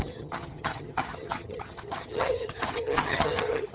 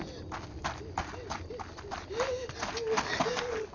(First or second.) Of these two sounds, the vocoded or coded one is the first